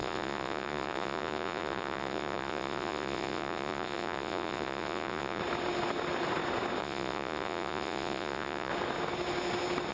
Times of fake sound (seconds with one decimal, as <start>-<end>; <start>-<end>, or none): 0.0-5.4; 6.8-8.7

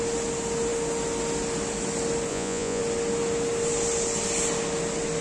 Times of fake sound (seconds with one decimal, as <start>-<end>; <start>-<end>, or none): 2.3-2.8

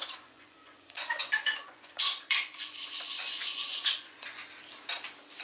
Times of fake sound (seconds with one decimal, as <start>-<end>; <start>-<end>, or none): 0.0-4.4

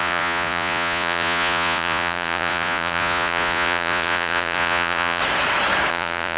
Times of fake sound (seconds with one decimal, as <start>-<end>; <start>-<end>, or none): 0.0-5.2; 5.9-6.4

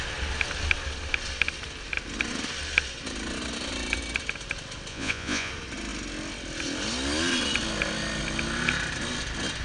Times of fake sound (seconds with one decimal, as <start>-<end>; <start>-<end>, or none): 4.9-5.5

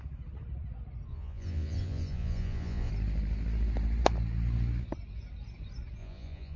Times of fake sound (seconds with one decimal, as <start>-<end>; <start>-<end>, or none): 1.1-2.9; 6.0-6.6

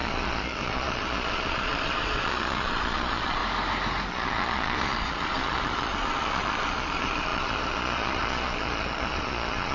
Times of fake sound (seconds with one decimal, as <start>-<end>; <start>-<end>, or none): 0.0-3.4; 4.1-9.7